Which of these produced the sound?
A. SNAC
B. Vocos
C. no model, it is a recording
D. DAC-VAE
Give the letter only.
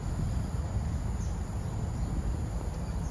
C